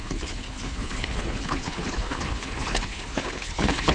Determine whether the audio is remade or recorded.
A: remade